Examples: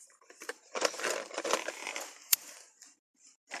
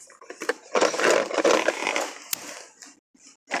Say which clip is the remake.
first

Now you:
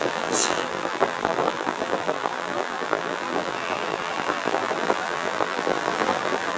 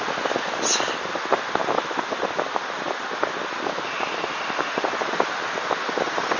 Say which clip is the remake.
first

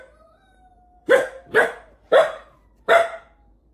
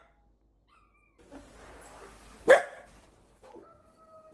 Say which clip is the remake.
first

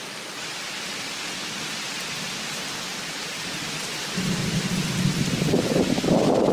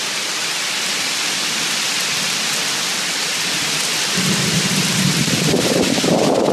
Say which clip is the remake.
second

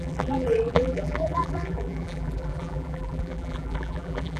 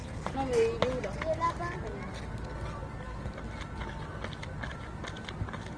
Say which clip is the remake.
first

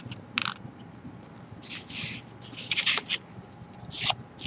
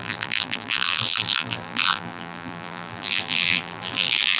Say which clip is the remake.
second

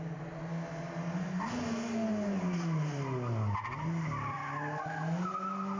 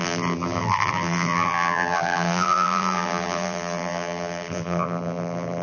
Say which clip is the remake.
second